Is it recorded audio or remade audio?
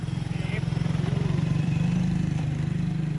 remade